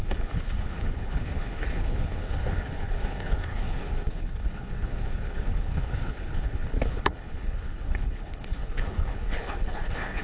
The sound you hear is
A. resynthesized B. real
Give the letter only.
A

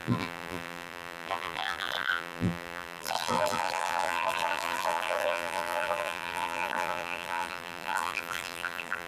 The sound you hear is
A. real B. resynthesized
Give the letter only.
B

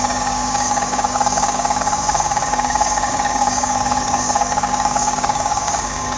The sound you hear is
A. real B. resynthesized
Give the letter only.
B